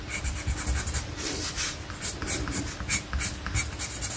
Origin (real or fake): real